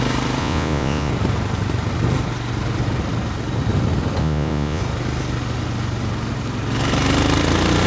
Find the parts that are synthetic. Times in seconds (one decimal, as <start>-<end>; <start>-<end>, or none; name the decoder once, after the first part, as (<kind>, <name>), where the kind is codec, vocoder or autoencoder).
0.4-1.1 (vocoder, Vocos); 4.2-4.8